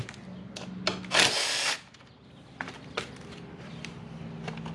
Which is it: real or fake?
real